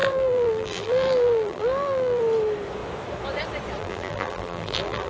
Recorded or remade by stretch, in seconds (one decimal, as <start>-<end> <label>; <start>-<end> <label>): 0.0-2.2 remade; 2.2-3.8 recorded; 3.8-5.1 remade